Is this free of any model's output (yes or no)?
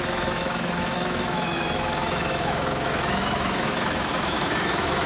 no